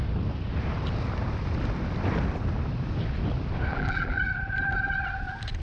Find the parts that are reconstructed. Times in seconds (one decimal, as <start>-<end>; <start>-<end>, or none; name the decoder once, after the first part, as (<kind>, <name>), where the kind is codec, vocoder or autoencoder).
3.7-4.2 (vocoder, BigVGAN v2)